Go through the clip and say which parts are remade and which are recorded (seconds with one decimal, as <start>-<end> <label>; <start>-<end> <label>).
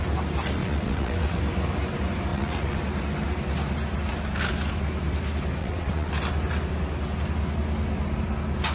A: 0.0-0.6 recorded; 0.6-1.4 remade; 1.4-2.3 recorded; 2.3-2.8 remade; 2.8-5.6 recorded; 5.6-6.1 remade; 6.1-8.7 recorded